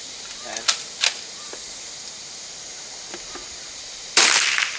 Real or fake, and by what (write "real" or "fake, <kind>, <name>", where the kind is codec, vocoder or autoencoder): real